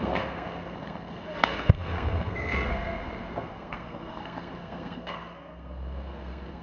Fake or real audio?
fake